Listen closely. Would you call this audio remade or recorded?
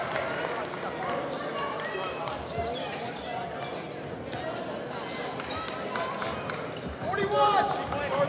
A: recorded